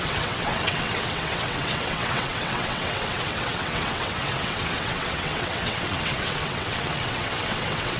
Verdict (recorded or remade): remade